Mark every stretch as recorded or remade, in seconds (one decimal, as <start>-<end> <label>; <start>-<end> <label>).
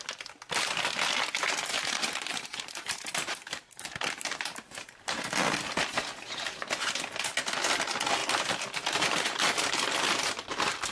0.0-1.7 recorded; 1.7-5.2 remade; 5.2-8.2 recorded; 8.2-10.3 remade; 10.3-10.9 recorded